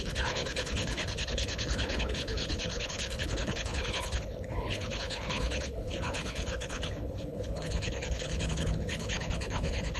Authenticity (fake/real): fake